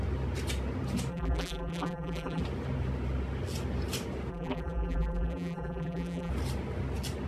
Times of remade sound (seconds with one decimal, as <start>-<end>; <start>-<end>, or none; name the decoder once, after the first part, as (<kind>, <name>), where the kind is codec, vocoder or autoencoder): 1.1-2.4 (vocoder, BigVGAN v2); 4.3-6.3